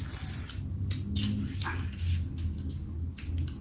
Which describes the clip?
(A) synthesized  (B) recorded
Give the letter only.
B